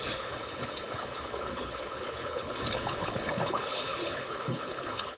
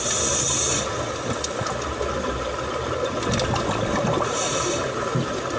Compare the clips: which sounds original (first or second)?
second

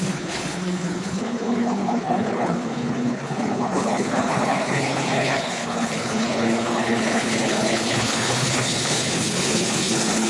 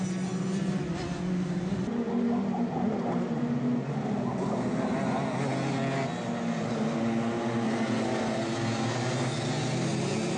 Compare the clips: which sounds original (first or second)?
second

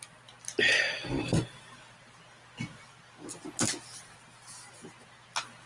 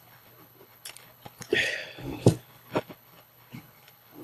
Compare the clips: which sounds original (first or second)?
first